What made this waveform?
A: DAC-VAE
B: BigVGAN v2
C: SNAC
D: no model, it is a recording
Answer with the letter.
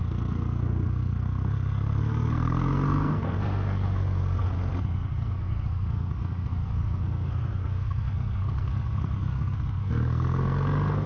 C